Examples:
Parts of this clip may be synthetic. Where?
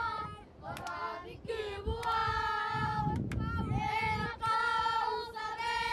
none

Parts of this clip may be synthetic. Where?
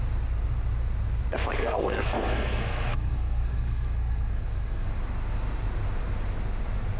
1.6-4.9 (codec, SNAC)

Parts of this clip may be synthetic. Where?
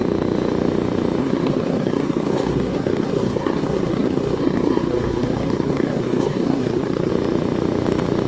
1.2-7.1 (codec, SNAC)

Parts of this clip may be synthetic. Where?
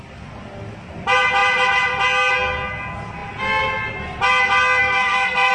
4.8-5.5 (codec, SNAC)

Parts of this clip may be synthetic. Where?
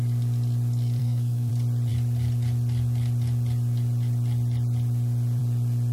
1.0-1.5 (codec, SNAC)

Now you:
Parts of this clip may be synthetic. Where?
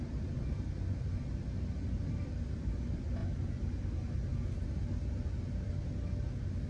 none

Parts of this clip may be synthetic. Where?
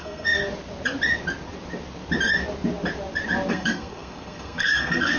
0.0-0.4 (codec, SNAC); 3.5-5.2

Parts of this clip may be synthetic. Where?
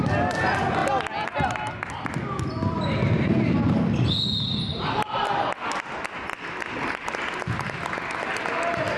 none